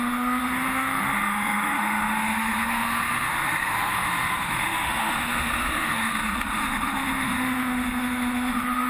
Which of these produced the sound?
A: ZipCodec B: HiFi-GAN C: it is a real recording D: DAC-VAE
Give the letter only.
D